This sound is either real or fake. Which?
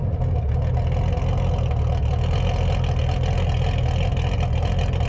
real